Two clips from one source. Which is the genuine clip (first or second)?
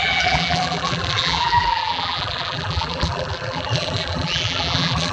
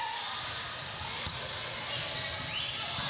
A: second